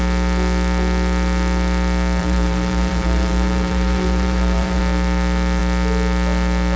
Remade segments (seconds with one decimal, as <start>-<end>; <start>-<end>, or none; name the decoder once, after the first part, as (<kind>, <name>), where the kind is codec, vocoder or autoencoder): 2.2-4.8 (vocoder, BigVGAN v2)